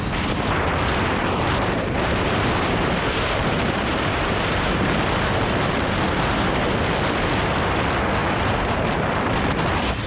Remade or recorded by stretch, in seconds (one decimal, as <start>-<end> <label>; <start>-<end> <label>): 0.0-1.2 recorded; 1.2-5.7 remade; 5.7-8.2 recorded; 8.2-8.8 remade; 8.8-10.1 recorded